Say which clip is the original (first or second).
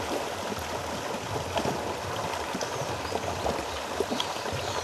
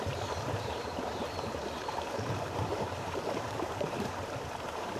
first